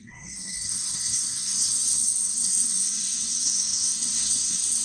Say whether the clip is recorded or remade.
remade